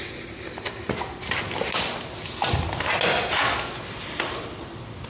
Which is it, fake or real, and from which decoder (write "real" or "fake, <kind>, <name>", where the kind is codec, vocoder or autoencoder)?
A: real